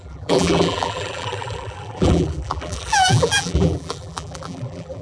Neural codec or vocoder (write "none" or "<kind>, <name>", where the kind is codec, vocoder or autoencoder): vocoder, BigVGAN v2